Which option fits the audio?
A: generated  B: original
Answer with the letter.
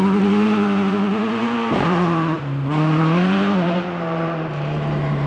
A